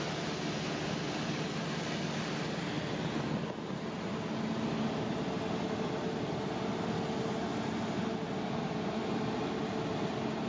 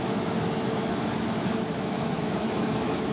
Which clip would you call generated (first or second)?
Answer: second